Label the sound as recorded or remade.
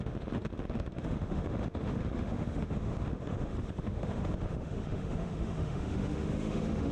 remade